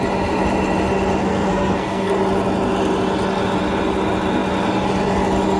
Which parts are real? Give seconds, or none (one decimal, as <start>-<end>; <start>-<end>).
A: 0.0-1.2; 2.1-5.6